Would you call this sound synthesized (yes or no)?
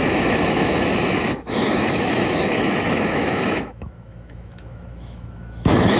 yes